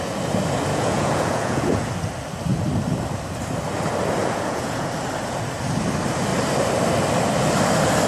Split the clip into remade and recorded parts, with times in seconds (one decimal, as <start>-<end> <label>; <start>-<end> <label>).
0.0-0.7 recorded; 0.7-1.9 remade; 1.9-4.2 recorded; 4.2-4.9 remade; 4.9-8.1 recorded

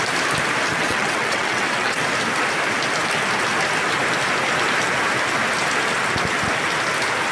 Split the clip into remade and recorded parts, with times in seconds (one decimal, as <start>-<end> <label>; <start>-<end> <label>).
0.0-0.7 recorded; 0.7-2.0 remade; 2.0-7.3 recorded